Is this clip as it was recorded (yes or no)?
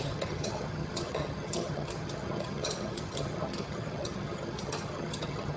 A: no